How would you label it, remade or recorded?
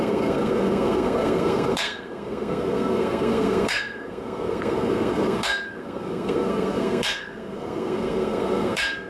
remade